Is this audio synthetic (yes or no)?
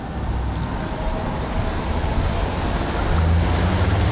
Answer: no